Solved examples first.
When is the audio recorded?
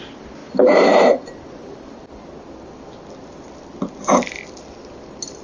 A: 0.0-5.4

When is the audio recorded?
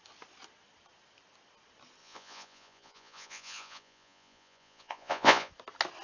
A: 0.0-2.0; 5.5-6.0